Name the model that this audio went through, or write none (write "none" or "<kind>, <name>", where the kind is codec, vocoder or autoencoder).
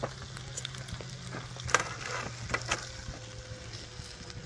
none